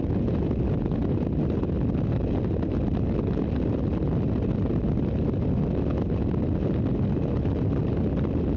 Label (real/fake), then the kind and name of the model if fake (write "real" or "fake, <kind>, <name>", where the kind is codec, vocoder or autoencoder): real